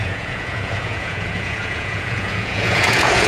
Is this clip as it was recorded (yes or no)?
no